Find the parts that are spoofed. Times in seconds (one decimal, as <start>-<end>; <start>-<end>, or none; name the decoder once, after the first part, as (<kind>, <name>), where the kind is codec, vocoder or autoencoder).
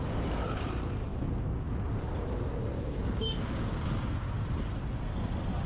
none